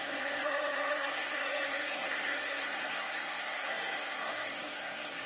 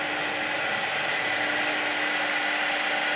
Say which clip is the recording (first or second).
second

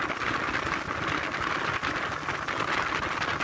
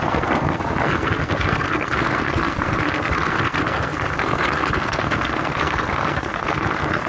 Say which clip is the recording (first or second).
first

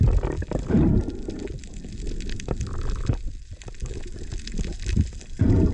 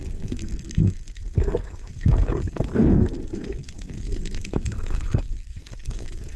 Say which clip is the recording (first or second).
first